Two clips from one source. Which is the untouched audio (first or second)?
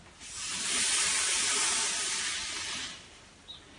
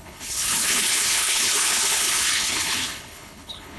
first